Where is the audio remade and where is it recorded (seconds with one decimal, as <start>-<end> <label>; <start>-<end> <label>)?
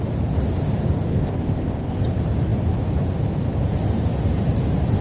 0.0-1.1 recorded; 1.1-2.0 remade; 2.0-5.0 recorded